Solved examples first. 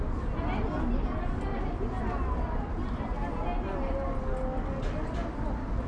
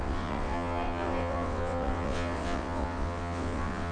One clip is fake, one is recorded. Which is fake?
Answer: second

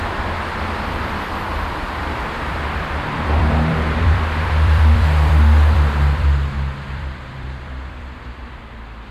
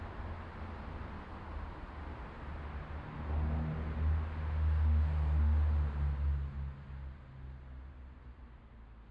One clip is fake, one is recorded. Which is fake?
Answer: first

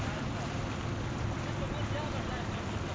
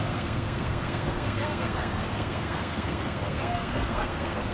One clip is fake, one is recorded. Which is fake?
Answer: second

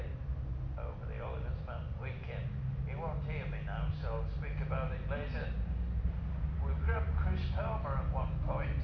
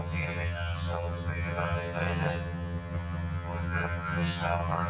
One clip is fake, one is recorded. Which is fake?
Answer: second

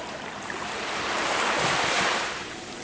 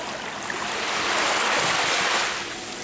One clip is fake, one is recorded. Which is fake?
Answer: first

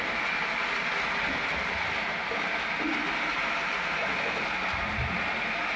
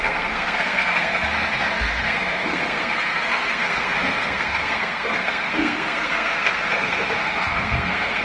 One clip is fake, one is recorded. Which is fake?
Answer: second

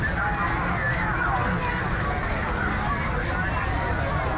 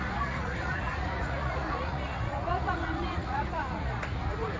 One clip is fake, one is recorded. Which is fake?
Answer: second